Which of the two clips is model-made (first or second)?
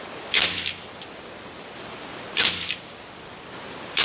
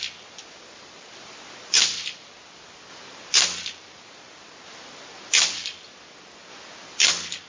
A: first